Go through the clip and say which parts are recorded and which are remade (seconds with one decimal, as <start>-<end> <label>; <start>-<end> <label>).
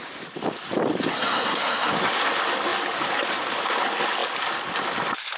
0.0-1.1 recorded; 1.1-1.9 remade; 1.9-5.4 recorded